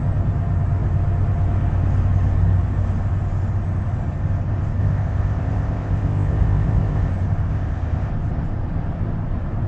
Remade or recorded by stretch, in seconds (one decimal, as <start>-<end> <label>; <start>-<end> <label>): 0.0-4.8 recorded; 4.8-7.1 remade; 7.1-7.5 recorded; 7.5-8.1 remade; 8.1-9.7 recorded